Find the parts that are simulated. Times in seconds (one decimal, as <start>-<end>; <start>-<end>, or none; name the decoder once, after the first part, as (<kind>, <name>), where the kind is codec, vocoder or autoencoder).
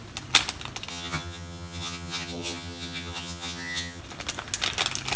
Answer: 0.9-4.0 (vocoder, HiFi-GAN)